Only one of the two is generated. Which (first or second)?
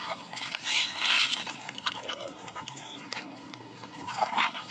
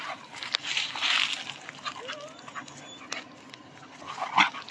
first